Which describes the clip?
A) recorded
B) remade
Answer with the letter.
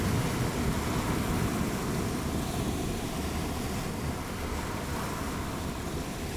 A